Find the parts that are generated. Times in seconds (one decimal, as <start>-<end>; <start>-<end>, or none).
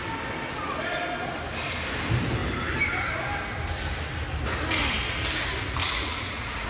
5.8-6.7